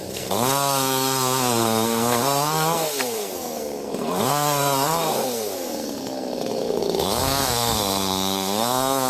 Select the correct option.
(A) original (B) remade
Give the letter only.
B